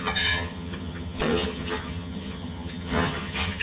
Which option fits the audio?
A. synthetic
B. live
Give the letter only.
A